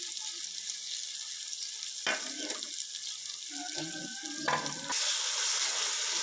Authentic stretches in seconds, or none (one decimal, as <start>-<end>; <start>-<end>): 0.0-6.2